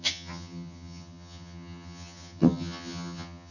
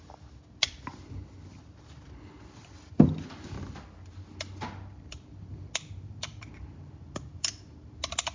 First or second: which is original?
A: second